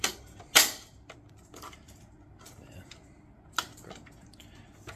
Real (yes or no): yes